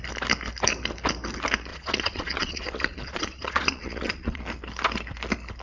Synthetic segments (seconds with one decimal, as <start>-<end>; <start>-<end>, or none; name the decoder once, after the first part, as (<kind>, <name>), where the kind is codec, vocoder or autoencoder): 1.7-4.4 (vocoder, Vocos)